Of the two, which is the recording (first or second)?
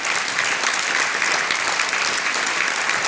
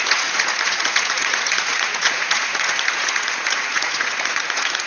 first